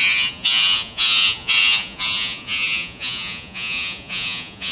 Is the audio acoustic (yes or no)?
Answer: no